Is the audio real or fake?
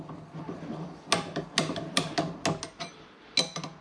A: real